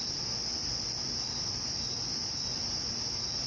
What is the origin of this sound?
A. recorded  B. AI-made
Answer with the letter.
A